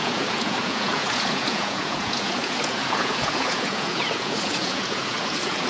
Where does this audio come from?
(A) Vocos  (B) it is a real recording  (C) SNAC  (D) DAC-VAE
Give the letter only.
A